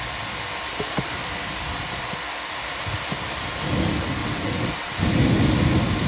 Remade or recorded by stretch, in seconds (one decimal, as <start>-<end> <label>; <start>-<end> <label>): 0.0-4.2 recorded; 4.2-5.0 remade; 5.0-6.1 recorded